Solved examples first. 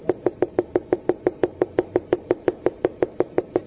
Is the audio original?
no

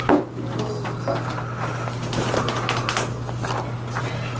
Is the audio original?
yes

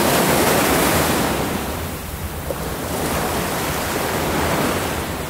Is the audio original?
no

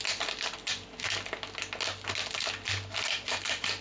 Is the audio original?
yes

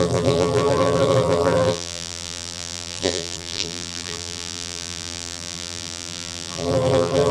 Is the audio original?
no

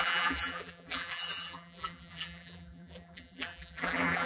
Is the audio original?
no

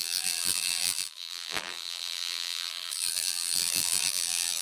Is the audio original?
no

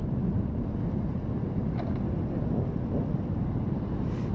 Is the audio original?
yes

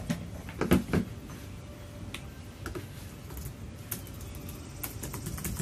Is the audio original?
yes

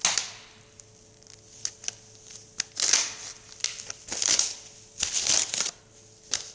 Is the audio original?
yes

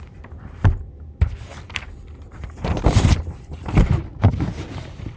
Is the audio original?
no